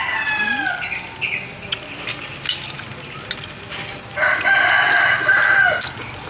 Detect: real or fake real